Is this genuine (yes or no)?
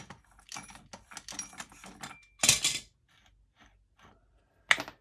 yes